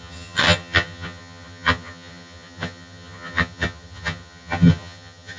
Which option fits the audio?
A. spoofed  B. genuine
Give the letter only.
A